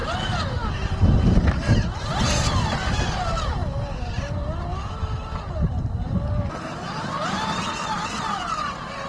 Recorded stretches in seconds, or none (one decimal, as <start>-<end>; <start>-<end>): 0.0-9.1